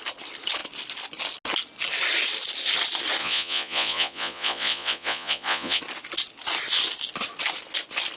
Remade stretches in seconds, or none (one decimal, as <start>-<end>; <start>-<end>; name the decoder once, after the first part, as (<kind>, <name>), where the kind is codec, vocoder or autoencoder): 3.2-5.8 (vocoder, Vocos)